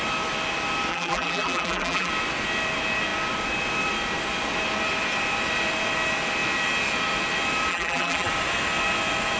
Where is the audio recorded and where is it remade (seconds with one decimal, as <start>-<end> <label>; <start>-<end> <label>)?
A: 0.0-0.9 recorded; 0.9-2.1 remade; 2.1-7.7 recorded; 7.7-8.3 remade; 8.3-9.4 recorded

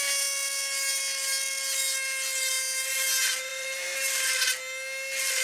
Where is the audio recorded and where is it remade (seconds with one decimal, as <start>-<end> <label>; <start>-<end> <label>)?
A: 0.0-3.5 recorded; 3.5-4.1 remade; 4.1-5.4 recorded